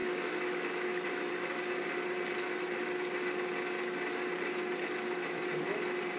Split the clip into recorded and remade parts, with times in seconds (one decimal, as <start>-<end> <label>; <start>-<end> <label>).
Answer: 0.0-1.3 remade; 1.3-6.2 recorded